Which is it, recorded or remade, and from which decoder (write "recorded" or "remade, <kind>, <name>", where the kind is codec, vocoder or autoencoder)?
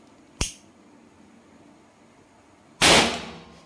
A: recorded